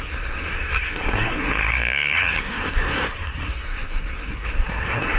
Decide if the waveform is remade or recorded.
remade